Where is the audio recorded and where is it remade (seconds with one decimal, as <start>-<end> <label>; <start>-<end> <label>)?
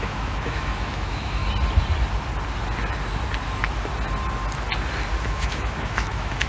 0.0-1.4 remade; 1.4-5.3 recorded; 5.3-6.5 remade